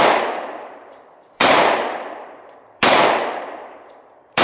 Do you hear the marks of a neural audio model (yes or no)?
yes